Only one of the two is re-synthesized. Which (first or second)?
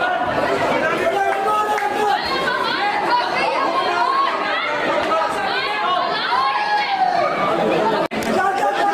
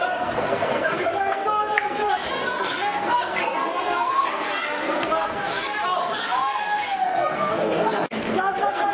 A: second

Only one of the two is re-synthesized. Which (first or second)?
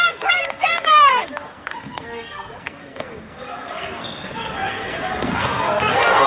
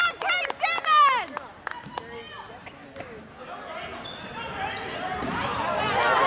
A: first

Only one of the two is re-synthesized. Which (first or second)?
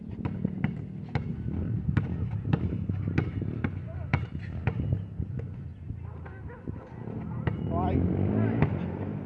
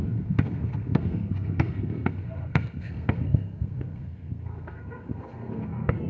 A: second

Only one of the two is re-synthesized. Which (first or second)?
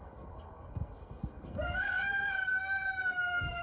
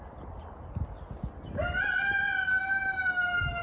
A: first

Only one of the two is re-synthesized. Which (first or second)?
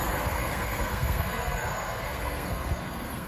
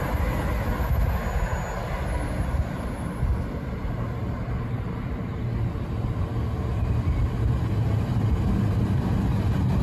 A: first